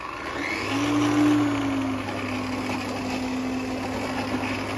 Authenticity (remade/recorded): recorded